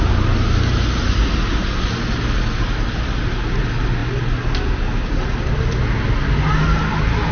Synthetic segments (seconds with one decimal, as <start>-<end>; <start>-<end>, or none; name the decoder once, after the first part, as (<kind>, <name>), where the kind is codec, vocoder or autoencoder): none